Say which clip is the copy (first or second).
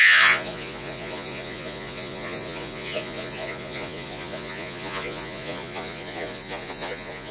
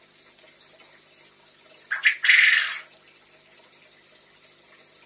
first